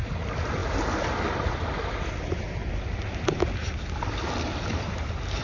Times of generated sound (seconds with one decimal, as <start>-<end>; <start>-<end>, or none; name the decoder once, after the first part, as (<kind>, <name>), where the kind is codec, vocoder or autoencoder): none